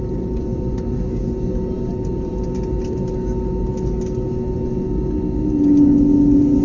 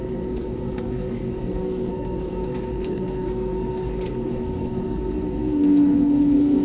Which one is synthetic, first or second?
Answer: second